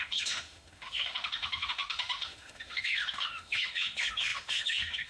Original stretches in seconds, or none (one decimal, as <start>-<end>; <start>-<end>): none